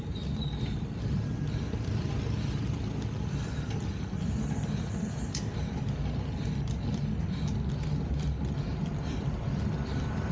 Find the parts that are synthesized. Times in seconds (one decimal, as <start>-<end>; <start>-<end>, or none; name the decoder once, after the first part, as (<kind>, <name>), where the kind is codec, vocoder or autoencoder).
3.9-5.5 (vocoder, BigVGAN v2); 8.7-10.3